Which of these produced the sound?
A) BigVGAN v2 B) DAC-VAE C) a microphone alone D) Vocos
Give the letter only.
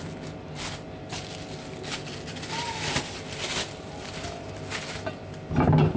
C